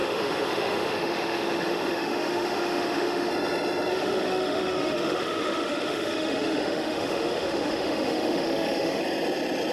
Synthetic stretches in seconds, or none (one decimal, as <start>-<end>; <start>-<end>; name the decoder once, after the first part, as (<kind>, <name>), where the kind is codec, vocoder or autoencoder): 0.0-3.3 (autoencoder, DAC-VAE); 3.9-9.0

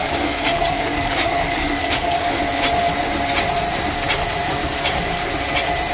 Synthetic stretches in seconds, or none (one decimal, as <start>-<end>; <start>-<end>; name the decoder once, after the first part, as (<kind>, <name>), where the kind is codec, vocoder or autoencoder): 0.0-2.4 (codec, DAC); 4.6-5.3

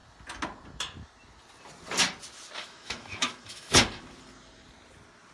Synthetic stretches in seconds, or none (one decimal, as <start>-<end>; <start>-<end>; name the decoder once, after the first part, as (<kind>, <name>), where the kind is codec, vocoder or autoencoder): 2.6-3.8 (autoencoder, DAC-VAE)